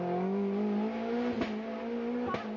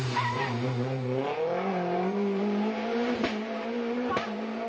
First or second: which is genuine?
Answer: first